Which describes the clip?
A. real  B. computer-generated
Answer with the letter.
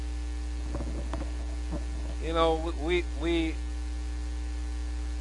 A